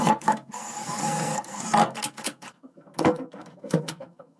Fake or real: fake